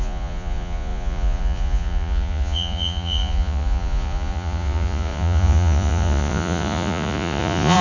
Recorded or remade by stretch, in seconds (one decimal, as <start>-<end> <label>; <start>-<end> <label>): 0.0-7.8 remade